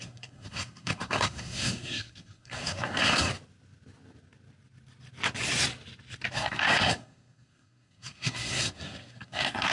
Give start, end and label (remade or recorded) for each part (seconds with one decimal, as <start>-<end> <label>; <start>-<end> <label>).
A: 0.0-3.3 remade; 3.3-6.3 recorded; 6.3-9.7 remade